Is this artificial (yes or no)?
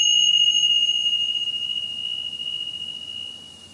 no